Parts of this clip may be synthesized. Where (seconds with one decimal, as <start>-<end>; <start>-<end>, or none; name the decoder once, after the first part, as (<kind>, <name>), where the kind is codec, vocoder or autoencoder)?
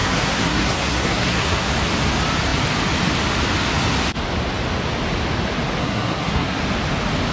0.0-1.7 (codec, SNAC); 5.8-6.6